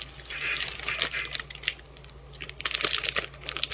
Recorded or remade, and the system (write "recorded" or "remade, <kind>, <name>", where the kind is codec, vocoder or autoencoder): recorded